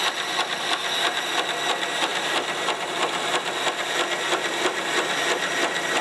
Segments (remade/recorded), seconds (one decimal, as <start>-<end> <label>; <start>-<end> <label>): 0.0-6.0 recorded